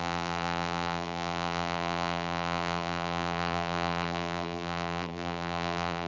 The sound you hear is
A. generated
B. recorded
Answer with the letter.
A